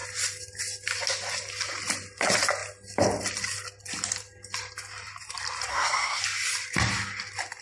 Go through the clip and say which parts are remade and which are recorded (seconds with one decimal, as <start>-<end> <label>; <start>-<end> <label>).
0.0-5.7 recorded; 5.7-6.2 remade; 6.2-7.6 recorded